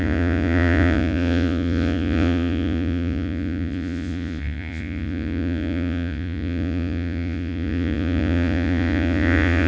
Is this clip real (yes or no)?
no